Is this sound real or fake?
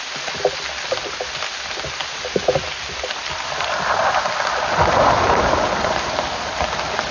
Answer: real